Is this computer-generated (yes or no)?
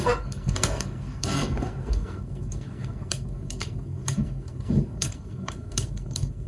yes